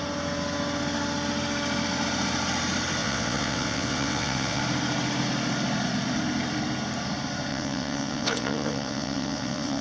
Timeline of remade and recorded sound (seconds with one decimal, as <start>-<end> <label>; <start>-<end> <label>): 0.0-3.0 recorded; 3.0-4.6 remade; 4.6-7.5 recorded; 7.5-9.8 remade